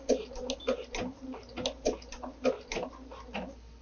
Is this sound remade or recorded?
recorded